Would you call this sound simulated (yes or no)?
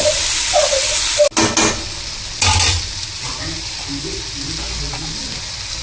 no